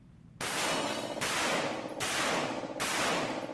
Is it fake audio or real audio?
real